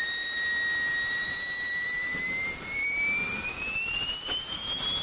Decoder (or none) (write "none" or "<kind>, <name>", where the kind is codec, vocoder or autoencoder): vocoder, BigVGAN v2